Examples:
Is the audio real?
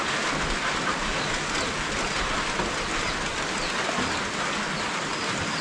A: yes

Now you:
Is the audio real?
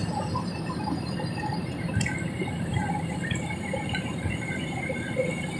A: no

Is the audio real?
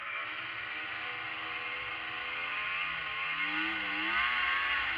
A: yes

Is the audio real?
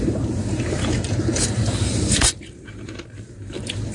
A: no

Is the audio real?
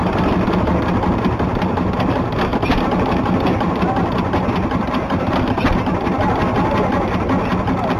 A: yes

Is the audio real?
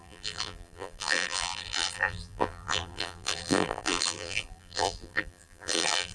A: no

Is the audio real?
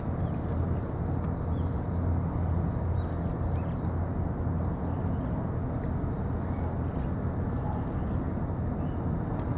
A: yes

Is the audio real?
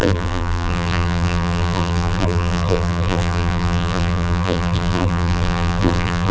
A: no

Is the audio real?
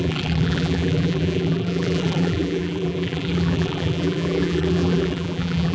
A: no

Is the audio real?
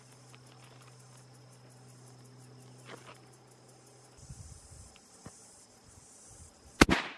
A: yes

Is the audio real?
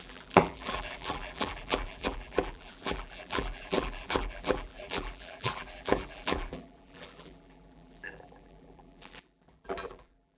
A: no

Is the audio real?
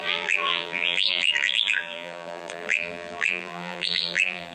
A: no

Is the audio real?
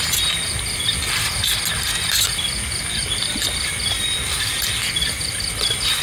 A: yes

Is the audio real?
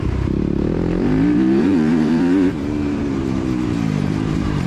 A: no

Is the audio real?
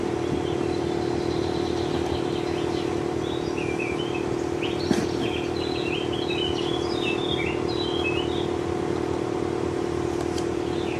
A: yes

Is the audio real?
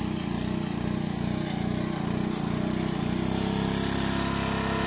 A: yes